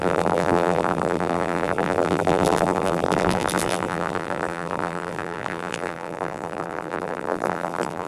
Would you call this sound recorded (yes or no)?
no